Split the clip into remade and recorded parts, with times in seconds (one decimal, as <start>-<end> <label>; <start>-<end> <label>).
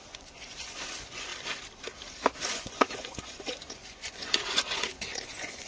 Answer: 0.0-1.3 remade; 1.3-2.5 recorded; 2.5-5.7 remade